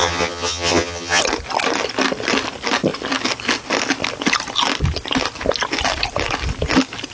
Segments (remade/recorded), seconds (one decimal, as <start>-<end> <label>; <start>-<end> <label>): 0.0-1.2 remade; 1.2-7.1 recorded